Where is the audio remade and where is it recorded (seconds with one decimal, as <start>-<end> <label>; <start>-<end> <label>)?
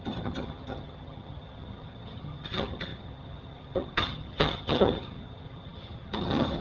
0.0-6.6 remade